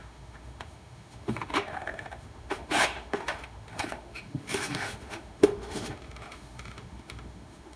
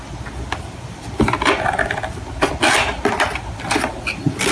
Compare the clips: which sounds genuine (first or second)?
second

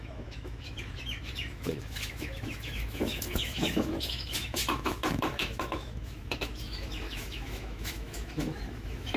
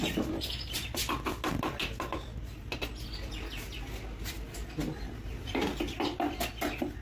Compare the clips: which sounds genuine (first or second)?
second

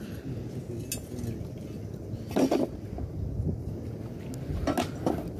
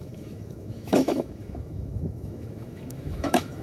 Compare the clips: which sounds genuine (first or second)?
first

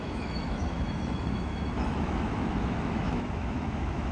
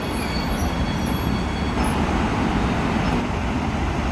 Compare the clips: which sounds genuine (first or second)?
second